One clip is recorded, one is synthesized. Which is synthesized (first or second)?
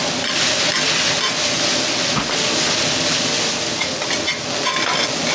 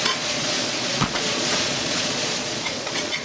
second